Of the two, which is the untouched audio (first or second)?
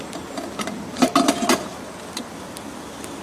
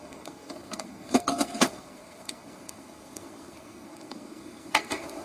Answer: first